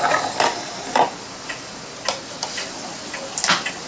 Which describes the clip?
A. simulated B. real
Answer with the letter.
B